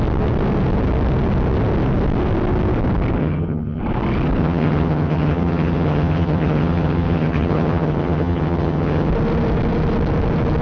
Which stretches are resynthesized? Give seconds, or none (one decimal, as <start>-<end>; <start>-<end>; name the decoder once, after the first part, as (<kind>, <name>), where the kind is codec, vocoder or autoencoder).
3.2-3.8 (vocoder, HiFi-GAN); 4.4-9.1